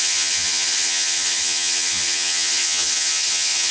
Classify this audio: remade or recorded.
remade